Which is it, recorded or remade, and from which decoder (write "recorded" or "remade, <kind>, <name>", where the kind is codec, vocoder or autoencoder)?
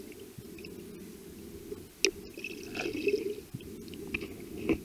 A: recorded